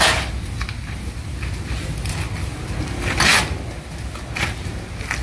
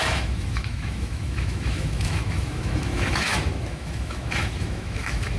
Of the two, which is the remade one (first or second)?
second